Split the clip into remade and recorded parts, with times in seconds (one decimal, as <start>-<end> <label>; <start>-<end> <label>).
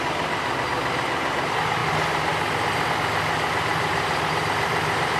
0.0-3.7 recorded; 3.7-4.4 remade; 4.4-5.2 recorded